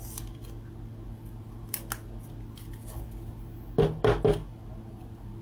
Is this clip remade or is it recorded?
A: recorded